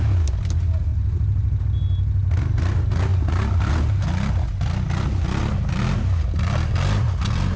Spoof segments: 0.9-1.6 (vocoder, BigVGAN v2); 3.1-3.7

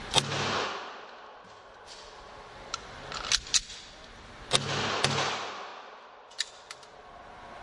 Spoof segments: none

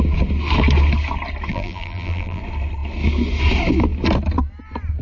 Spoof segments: 1.5-2.4 (vocoder, BigVGAN v2)

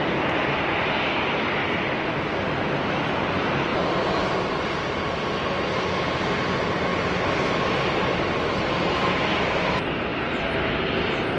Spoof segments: 1.6-3.1 (vocoder, BigVGAN v2); 3.7-5.2; 6.9-7.7; 10.1-10.8

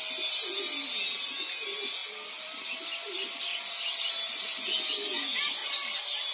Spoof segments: 2.0-3.6 (vocoder, BigVGAN v2)

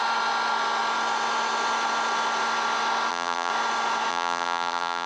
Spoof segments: 3.1-3.5 (vocoder, BigVGAN v2); 4.1-5.1